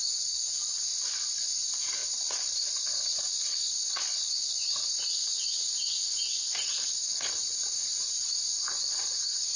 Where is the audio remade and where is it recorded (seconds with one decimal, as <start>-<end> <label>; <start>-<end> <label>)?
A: 0.0-0.9 remade; 0.9-1.6 recorded; 1.6-2.0 remade; 2.0-4.5 recorded; 4.5-9.6 remade

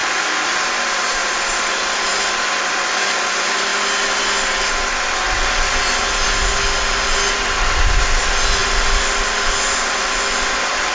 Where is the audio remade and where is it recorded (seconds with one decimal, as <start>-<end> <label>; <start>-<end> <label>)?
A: 0.0-10.9 recorded